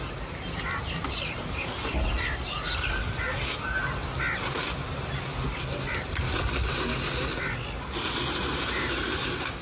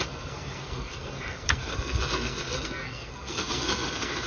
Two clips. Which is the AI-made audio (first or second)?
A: second